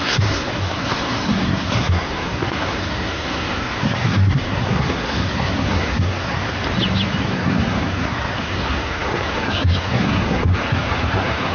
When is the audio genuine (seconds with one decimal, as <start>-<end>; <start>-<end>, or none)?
6.4-7.2